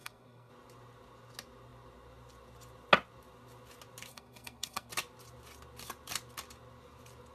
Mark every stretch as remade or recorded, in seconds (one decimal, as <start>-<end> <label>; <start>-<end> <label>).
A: 0.0-0.5 remade; 0.5-4.1 recorded; 4.1-4.9 remade; 4.9-7.3 recorded